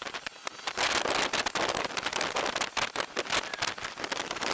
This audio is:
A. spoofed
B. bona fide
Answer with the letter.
B